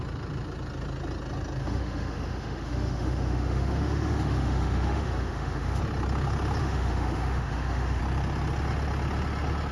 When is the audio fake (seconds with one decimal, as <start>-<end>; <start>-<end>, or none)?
1.6-5.8; 6.6-8.0